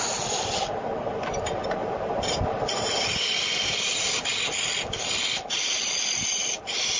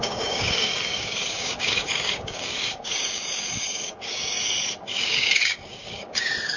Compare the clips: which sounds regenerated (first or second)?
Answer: second